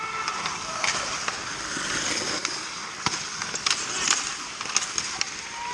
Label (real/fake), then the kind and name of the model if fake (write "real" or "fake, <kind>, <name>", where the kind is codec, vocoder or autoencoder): real